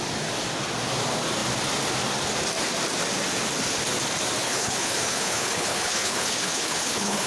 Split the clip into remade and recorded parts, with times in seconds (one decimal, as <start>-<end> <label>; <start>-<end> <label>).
0.0-4.4 recorded; 4.4-7.3 remade